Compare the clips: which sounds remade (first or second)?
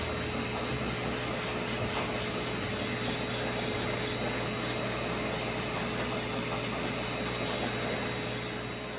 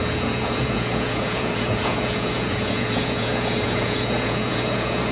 second